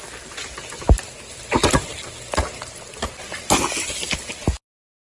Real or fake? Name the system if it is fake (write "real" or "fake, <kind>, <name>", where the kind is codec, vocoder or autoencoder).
real